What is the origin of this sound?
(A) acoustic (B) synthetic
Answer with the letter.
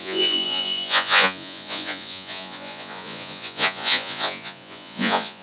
B